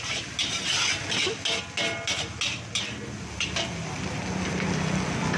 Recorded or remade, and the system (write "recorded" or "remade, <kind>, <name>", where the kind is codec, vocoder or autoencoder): recorded